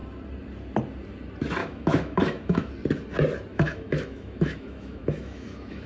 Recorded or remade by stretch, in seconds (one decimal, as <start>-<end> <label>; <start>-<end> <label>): 0.0-1.6 recorded; 1.6-2.7 remade; 2.7-3.5 recorded; 3.5-5.9 remade